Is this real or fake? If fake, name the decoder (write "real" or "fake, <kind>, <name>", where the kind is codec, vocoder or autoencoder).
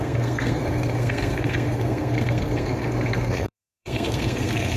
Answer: fake, codec, SNAC